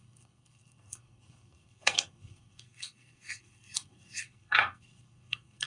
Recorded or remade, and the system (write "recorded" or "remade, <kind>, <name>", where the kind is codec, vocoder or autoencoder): remade, codec, SNAC